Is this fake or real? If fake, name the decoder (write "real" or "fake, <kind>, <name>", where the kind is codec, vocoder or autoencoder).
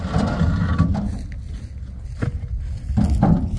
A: real